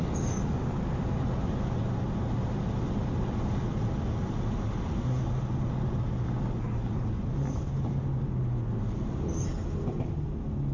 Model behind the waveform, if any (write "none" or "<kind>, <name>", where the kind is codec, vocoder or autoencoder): none